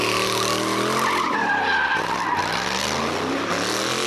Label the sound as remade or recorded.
recorded